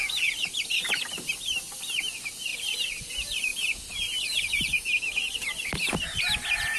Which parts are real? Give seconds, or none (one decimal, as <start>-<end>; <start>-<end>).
0.0-2.5; 3.1-3.5; 6.2-6.8